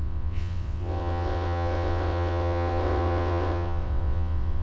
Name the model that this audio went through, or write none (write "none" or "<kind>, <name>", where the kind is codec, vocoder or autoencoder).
vocoder, WaveNeXt